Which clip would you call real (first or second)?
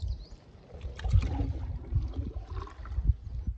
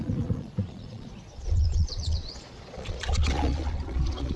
first